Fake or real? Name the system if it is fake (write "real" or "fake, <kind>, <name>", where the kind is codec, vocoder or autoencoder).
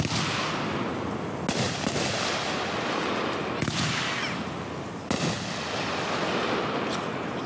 real